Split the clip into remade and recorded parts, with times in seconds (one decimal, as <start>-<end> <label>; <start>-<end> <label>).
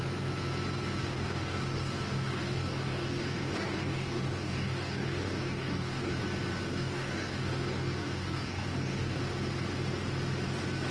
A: 0.0-1.0 recorded; 1.0-6.2 remade; 6.2-6.7 recorded; 6.7-9.2 remade; 9.2-10.9 recorded